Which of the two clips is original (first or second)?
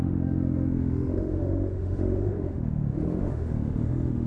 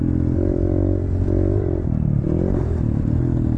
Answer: second